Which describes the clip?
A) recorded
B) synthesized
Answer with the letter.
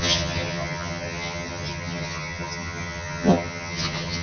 B